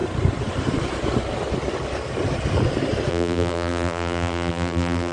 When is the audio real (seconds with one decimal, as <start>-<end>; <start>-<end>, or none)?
0.0-3.1